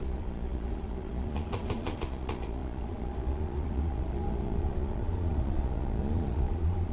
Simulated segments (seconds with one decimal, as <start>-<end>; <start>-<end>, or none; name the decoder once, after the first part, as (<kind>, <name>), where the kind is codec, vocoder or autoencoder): 0.0-6.9 (vocoder, Vocos)

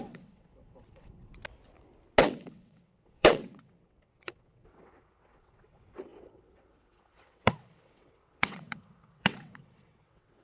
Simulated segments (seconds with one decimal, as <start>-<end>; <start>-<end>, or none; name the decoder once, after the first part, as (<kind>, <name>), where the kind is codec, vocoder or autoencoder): 0.0-1.4 (vocoder, WaveNeXt); 2.2-10.4

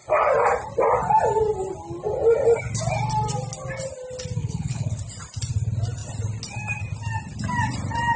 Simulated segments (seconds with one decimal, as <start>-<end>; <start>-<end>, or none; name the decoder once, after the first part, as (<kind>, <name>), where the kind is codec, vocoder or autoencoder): 4.4-5.0 (codec, HILCodec)